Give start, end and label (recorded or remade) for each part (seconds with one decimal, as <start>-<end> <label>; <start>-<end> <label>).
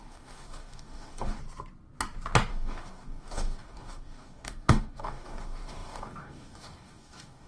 0.0-1.4 remade; 1.4-2.5 recorded; 2.5-7.5 remade